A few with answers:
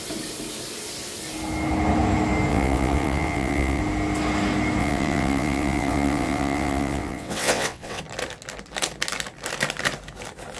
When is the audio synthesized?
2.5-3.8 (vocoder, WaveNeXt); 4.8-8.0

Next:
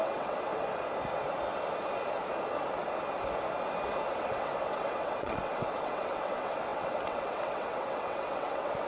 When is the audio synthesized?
0.0-0.5 (vocoder, WaveNeXt); 4.2-8.9

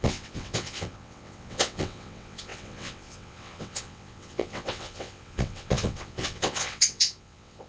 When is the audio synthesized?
0.0-7.7 (vocoder, WaveNeXt)

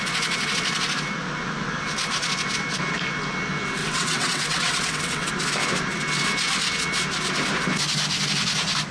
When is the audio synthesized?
3.8-5.3 (vocoder, WaveNeXt)

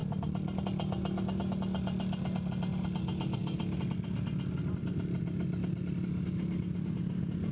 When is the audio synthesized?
none

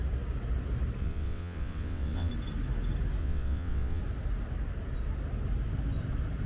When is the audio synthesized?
1.0-2.3 (vocoder, WaveNeXt); 3.2-4.0